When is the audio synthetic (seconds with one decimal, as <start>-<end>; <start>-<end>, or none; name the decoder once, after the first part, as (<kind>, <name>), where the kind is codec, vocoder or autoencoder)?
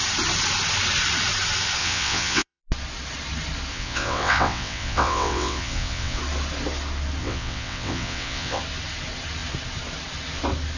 1.8-2.6 (vocoder, WaveNeXt); 3.7-6.2; 7.2-8.6